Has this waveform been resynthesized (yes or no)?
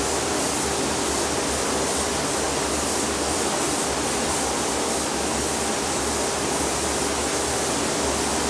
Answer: no